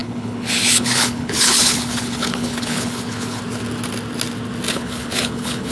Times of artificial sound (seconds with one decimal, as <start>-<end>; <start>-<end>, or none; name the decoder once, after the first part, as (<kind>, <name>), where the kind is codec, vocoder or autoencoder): 0.0-3.4 (codec, HILCodec); 4.7-5.7